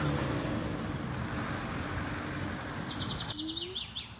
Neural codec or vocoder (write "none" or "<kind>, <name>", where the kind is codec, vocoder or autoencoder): none